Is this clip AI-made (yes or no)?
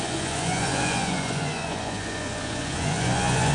yes